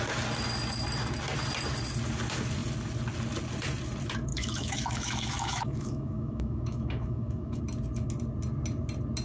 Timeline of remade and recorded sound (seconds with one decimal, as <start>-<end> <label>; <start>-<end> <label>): 0.0-4.3 recorded; 4.3-7.6 remade; 7.6-9.2 recorded